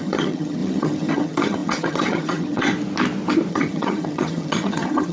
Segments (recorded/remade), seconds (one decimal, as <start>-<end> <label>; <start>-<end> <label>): 0.0-2.7 remade; 2.7-3.5 recorded; 3.5-5.1 remade